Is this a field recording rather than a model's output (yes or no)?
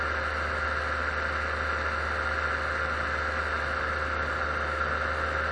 yes